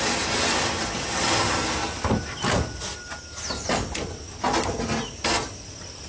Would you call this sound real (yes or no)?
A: yes